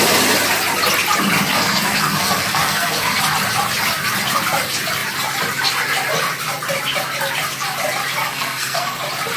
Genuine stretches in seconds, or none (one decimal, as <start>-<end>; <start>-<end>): 0.0-1.5; 3.2-8.2; 9.0-9.4